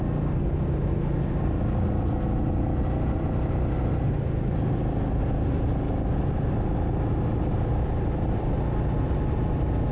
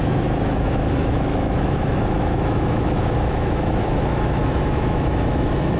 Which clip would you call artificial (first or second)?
second